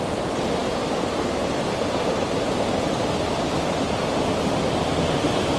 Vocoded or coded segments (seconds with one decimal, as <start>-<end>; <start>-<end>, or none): none